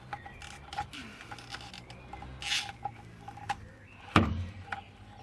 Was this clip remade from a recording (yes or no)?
no